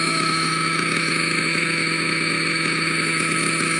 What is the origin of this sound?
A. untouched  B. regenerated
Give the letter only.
B